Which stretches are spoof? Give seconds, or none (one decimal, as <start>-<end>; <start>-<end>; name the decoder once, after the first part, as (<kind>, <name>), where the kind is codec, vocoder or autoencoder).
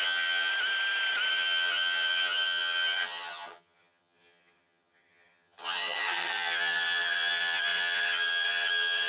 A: 0.0-0.5 (vocoder, HiFi-GAN); 1.3-9.1